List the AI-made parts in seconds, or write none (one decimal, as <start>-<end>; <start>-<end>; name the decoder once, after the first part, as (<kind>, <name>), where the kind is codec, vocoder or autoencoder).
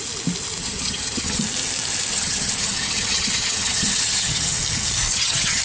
0.6-1.4 (vocoder, HiFi-GAN); 2.1-4.6; 5.1-5.6